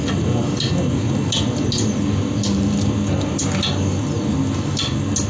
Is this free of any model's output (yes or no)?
yes